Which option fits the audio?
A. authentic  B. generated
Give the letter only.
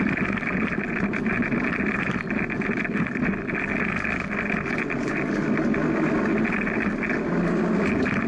A